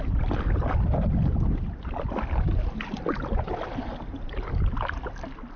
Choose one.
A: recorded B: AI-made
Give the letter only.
A